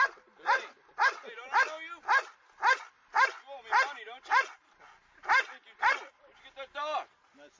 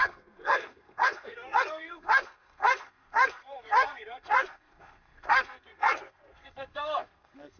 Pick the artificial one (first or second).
second